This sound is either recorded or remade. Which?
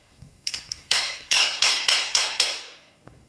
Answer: remade